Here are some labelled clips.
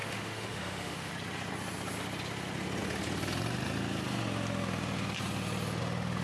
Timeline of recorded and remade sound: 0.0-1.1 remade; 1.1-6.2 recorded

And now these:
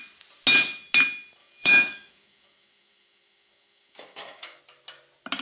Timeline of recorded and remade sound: 0.0-1.4 recorded; 1.4-4.6 remade; 4.6-5.4 recorded

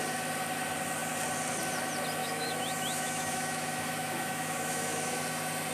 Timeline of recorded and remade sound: 0.0-2.2 recorded; 2.2-5.2 remade; 5.2-5.7 recorded

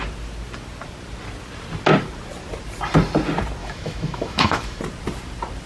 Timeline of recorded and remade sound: 0.0-3.6 recorded; 3.6-4.8 remade; 4.8-5.7 recorded

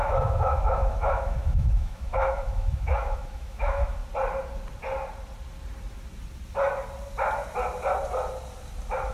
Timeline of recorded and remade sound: 0.0-4.0 remade; 4.0-9.1 recorded

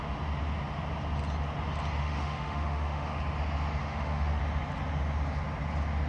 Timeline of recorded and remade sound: 0.0-2.0 recorded; 2.0-3.2 remade; 3.2-3.8 recorded; 3.8-4.4 remade; 4.4-6.1 recorded

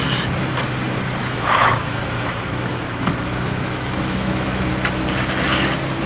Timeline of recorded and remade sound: 0.0-1.2 recorded; 1.2-4.7 remade; 4.7-6.1 recorded